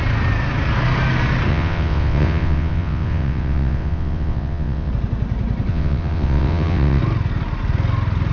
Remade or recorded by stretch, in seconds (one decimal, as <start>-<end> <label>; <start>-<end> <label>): 0.0-1.5 recorded; 1.5-4.9 remade; 4.9-5.7 recorded; 5.7-7.0 remade; 7.0-8.3 recorded